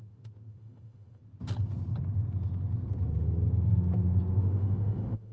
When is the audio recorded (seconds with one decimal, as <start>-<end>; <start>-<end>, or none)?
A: 1.2-4.4